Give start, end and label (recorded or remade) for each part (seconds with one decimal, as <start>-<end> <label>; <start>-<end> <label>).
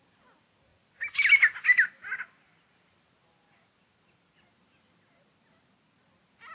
0.0-6.5 recorded